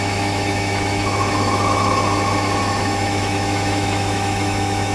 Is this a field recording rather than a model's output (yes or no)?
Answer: no